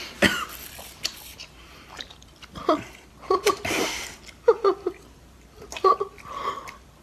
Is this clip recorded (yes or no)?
no